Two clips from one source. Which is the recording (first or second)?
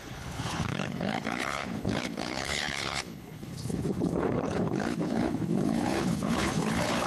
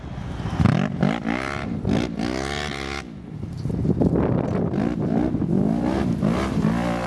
second